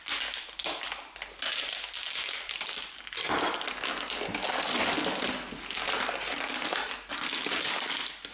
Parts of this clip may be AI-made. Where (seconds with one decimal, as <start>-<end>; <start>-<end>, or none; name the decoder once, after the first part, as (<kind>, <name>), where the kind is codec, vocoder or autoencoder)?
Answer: none